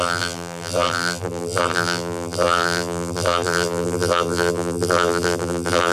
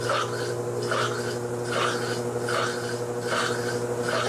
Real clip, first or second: second